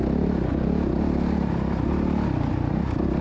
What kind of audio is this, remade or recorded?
recorded